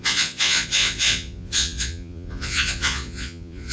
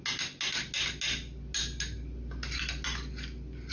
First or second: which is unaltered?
second